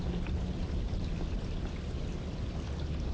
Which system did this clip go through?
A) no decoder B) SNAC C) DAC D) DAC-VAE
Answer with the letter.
A